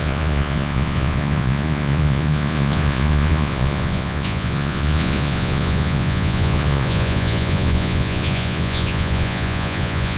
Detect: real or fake fake